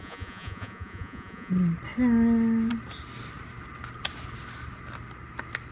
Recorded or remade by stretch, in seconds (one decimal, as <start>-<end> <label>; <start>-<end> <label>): 0.0-1.5 remade; 1.5-5.7 recorded